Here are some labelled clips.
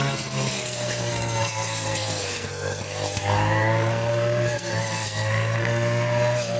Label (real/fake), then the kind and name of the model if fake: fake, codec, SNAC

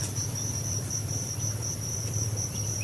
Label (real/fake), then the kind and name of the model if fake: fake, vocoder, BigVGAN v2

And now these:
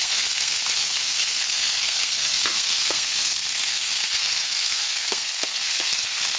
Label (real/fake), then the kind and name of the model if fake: fake, codec, SNAC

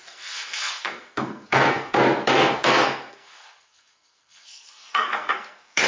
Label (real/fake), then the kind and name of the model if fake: fake, codec, SNAC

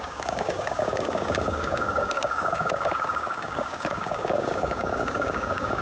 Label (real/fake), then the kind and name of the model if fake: fake, codec, DAC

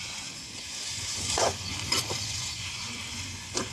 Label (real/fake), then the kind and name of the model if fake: fake, vocoder, Vocos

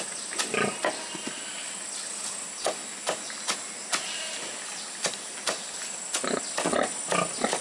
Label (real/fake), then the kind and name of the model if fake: real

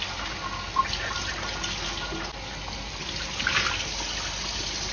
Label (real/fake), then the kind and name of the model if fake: real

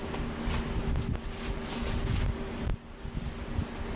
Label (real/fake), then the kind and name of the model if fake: real